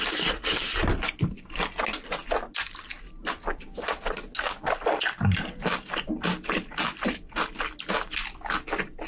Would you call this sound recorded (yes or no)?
yes